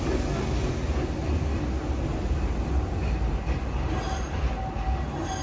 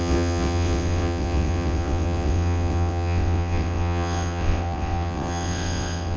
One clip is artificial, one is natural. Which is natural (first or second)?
first